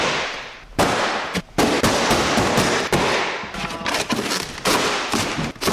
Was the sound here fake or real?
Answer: real